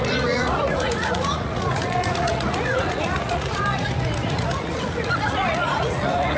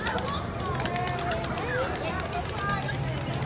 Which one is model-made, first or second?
first